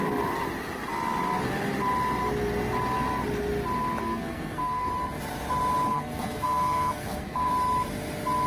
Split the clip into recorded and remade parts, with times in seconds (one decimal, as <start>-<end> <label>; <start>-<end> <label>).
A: 0.0-4.0 recorded; 4.0-4.9 remade; 4.9-5.9 recorded; 5.9-7.5 remade; 7.5-8.5 recorded